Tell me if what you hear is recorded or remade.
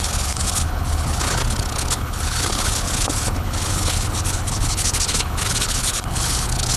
remade